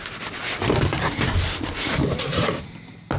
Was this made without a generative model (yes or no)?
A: yes